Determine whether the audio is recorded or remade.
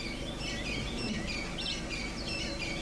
recorded